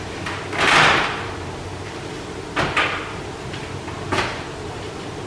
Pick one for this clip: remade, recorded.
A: recorded